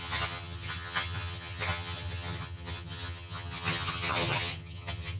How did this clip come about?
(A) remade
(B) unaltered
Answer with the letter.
A